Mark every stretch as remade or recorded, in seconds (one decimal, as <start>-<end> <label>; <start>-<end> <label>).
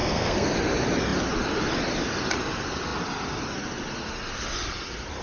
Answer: 0.0-0.5 remade; 0.5-5.2 recorded